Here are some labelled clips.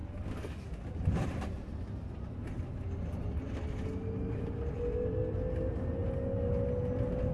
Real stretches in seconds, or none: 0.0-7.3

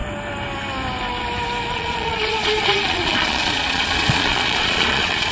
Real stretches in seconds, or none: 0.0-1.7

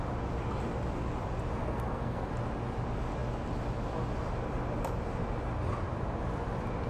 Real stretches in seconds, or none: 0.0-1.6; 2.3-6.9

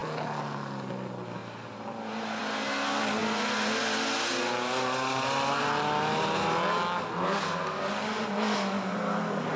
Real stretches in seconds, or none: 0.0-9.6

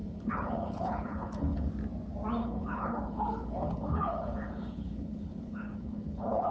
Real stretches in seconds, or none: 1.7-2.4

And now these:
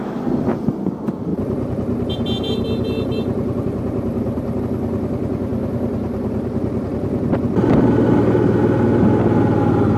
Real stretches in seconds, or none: 0.0-1.3; 4.6-10.0